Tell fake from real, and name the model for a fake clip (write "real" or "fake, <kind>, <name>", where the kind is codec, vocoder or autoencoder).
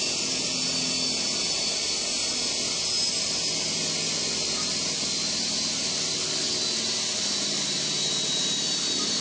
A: real